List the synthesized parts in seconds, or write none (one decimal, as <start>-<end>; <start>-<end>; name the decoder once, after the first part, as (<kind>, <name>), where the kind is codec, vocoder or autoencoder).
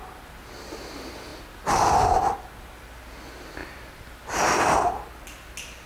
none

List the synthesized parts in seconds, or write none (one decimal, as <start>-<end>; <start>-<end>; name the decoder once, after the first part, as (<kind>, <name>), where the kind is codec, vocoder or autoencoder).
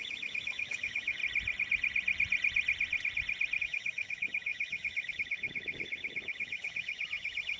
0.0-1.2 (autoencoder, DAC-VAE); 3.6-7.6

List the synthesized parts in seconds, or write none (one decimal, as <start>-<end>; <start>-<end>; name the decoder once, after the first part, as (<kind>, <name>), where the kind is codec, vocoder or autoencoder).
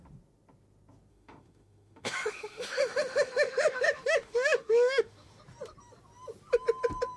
1.1-5.4 (autoencoder, DAC-VAE)